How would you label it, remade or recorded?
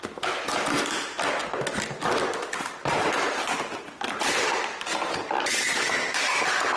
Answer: recorded